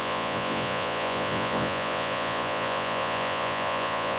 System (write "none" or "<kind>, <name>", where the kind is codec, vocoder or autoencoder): vocoder, Vocos